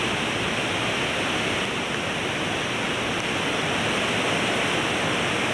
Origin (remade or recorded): recorded